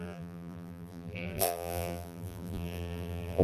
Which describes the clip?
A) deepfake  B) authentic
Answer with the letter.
A